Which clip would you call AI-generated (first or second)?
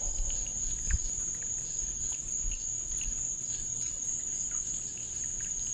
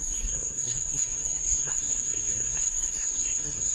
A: second